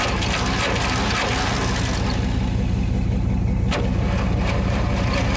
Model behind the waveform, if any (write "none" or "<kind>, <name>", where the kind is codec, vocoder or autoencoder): none